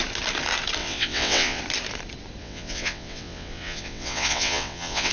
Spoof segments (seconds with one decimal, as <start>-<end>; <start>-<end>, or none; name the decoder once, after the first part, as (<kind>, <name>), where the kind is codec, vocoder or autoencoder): 0.8-1.6 (vocoder, WaveNeXt); 2.4-5.1